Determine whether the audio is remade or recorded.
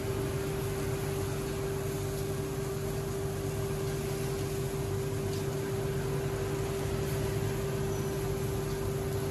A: recorded